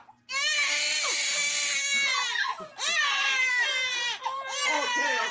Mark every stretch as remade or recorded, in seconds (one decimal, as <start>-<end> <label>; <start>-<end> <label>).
0.0-5.3 recorded